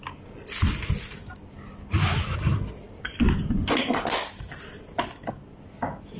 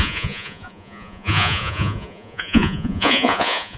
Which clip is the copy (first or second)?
second